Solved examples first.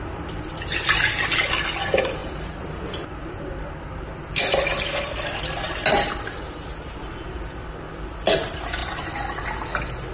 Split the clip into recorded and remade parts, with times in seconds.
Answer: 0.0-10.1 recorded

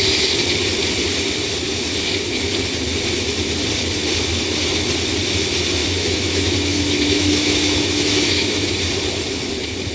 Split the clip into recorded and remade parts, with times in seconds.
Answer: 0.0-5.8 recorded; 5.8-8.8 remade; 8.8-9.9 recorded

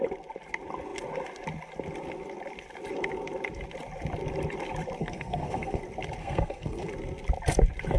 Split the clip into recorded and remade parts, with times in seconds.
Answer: 0.0-5.0 recorded; 5.0-5.8 remade; 5.8-6.2 recorded; 6.2-6.9 remade; 6.9-8.0 recorded